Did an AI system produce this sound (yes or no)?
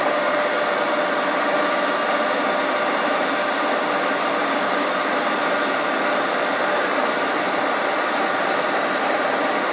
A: no